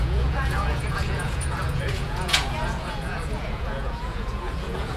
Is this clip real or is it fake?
fake